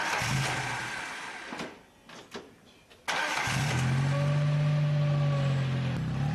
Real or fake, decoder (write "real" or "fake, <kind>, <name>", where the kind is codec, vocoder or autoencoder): real